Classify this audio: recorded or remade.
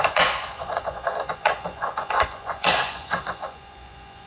remade